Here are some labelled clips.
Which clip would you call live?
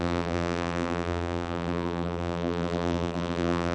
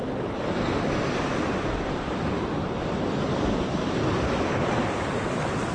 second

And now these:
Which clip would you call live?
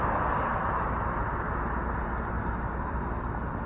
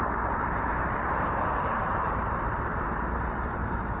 first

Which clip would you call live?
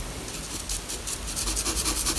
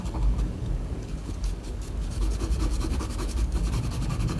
first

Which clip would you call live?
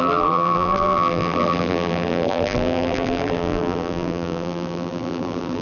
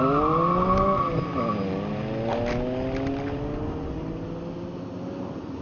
second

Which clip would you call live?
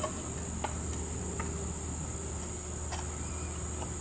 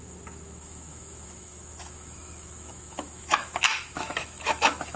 first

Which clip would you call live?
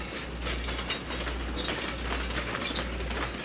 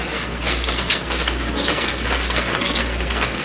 first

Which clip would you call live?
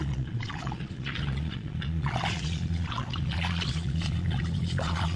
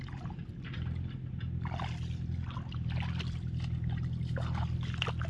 second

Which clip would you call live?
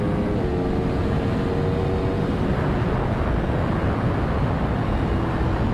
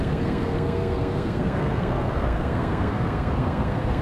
first